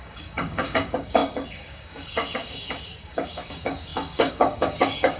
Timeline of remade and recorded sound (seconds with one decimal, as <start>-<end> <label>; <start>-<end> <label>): 0.0-5.2 remade